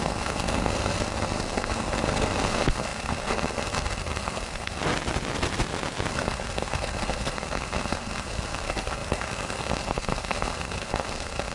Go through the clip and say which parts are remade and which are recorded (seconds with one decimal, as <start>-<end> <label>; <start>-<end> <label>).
0.0-4.8 remade; 4.8-6.1 recorded; 6.1-11.5 remade